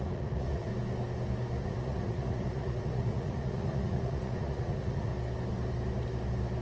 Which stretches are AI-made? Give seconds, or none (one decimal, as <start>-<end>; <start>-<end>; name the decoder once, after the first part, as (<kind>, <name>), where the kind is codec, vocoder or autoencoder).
0.0-0.7 (vocoder, Vocos); 1.6-5.1